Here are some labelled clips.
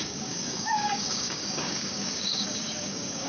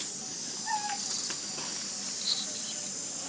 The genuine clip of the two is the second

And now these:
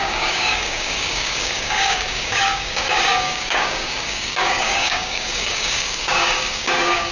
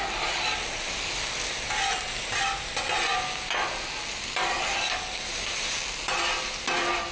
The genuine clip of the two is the second